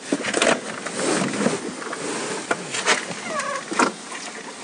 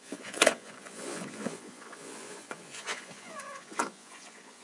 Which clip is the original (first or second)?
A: first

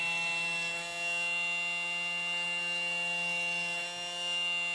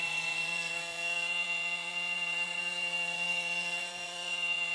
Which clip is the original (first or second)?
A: first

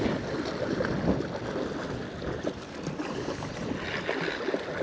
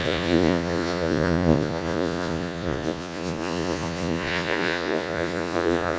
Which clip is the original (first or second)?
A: first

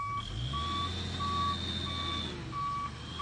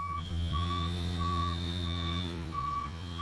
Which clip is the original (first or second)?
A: first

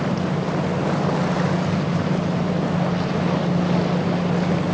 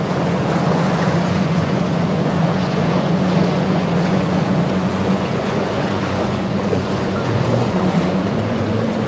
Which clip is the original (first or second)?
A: first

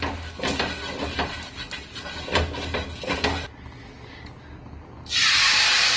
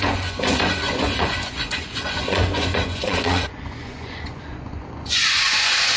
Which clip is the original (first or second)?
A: first